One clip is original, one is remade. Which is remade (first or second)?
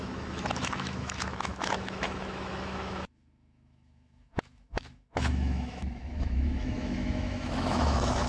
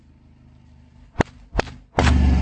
first